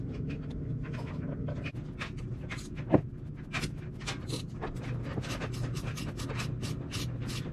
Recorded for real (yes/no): yes